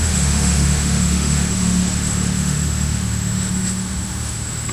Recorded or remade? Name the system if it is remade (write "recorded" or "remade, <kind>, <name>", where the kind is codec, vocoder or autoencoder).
remade, autoencoder, DAC-VAE